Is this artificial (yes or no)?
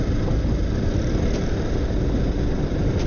no